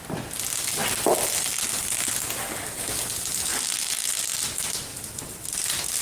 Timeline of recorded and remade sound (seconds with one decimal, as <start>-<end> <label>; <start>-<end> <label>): 0.0-6.0 recorded